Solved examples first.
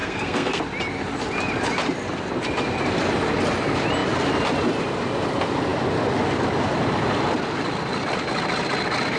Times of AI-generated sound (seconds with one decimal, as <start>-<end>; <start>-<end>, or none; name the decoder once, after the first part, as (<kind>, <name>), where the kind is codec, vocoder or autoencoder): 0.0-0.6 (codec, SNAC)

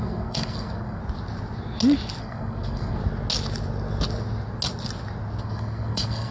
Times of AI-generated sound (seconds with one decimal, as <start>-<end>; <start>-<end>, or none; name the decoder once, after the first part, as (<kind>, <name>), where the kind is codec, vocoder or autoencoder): 0.0-1.0 (codec, SNAC); 2.2-3.0; 5.4-6.3

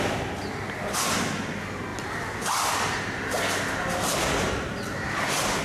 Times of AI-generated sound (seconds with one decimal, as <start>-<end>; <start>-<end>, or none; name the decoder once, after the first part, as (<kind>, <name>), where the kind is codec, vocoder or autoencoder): none

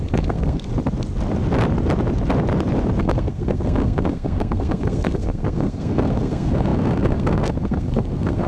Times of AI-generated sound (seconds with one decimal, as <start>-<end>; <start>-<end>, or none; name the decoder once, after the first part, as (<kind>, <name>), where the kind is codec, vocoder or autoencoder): 0.0-0.7 (codec, SNAC); 3.0-8.5